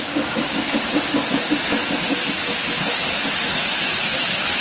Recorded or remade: remade